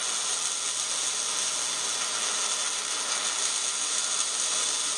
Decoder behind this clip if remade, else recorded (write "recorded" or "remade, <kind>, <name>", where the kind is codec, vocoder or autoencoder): recorded